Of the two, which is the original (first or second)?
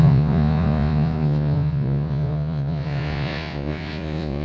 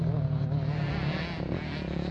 second